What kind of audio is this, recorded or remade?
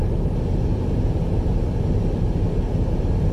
recorded